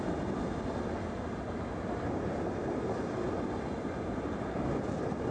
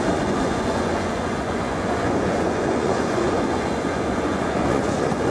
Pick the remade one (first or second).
second